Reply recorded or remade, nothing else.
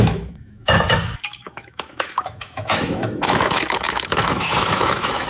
remade